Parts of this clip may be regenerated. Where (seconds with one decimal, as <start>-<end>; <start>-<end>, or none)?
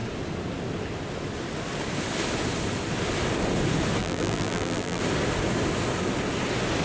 4.0-5.0